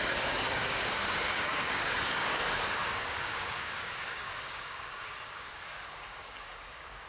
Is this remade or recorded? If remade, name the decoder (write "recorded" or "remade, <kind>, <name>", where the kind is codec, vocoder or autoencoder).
remade, codec, DAC